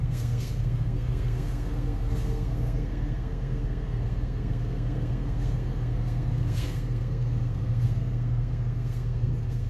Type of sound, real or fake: fake